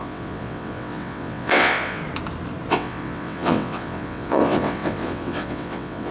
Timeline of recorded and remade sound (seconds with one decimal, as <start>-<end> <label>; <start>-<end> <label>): 0.0-2.0 remade; 2.0-2.7 recorded; 2.7-6.1 remade